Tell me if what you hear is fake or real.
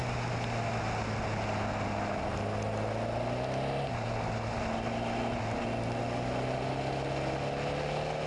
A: real